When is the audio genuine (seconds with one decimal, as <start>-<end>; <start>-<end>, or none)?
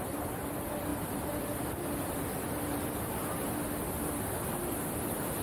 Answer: 0.0-5.4